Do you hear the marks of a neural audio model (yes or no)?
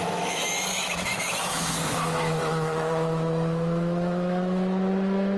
yes